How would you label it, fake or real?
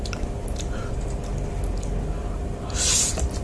real